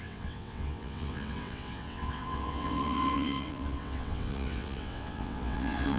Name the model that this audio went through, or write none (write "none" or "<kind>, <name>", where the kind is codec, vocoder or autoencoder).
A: vocoder, WaveNeXt